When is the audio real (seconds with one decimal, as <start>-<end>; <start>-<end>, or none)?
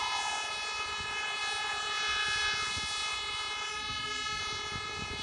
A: 3.7-4.4